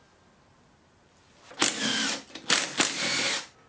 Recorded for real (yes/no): yes